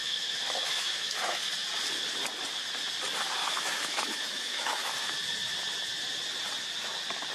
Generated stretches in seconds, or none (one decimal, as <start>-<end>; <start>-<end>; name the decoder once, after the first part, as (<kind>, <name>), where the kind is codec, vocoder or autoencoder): 0.0-1.5 (autoencoder, DAC-VAE); 3.4-4.9